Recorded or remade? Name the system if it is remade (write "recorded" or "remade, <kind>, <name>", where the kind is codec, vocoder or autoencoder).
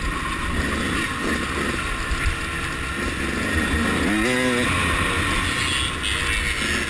recorded